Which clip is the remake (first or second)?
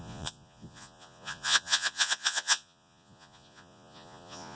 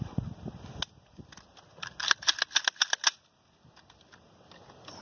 first